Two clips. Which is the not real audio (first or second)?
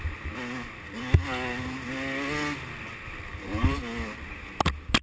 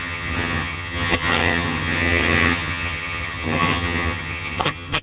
second